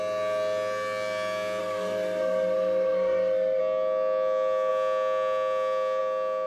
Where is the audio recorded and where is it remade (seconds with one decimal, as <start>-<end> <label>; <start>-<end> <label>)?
0.0-1.6 recorded; 1.6-3.6 remade; 3.6-6.5 recorded